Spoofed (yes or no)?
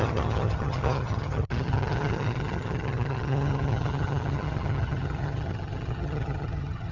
yes